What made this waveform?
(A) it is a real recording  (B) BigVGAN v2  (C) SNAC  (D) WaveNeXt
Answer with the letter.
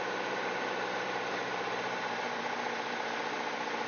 B